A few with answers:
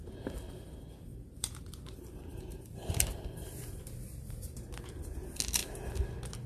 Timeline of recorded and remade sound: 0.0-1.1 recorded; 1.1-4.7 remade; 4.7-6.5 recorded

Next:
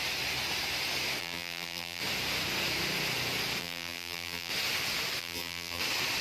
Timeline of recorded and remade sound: 0.0-1.2 recorded; 1.2-2.0 remade; 2.0-3.6 recorded; 3.6-4.5 remade; 4.5-5.2 recorded; 5.2-5.8 remade; 5.8-6.2 recorded

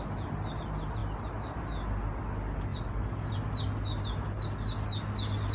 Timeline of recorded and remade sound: 0.0-2.7 recorded; 2.7-3.3 remade; 3.3-5.5 recorded

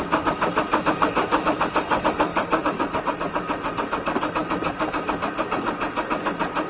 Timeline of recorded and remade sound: 0.0-2.3 recorded; 2.3-3.0 remade; 3.0-6.7 recorded

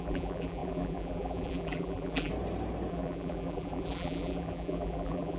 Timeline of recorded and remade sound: 0.0-2.3 remade; 2.3-2.9 recorded; 2.9-5.4 remade

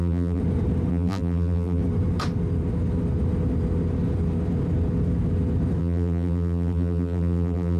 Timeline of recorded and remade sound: 0.0-0.4 remade; 0.4-0.9 recorded; 0.9-1.8 remade; 1.8-5.8 recorded; 5.8-7.8 remade